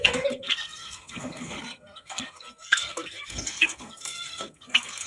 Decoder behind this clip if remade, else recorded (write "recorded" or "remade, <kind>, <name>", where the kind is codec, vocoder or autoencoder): remade, codec, SNAC